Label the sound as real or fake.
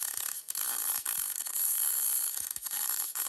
fake